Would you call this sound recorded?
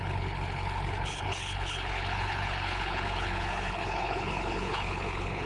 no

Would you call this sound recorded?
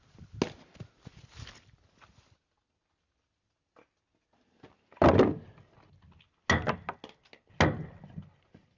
yes